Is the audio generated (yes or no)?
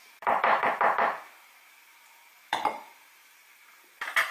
yes